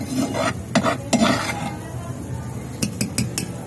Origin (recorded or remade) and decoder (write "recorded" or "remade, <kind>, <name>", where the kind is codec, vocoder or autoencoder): recorded